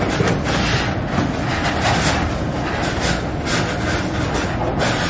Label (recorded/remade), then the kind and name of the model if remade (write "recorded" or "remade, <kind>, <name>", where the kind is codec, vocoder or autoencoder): recorded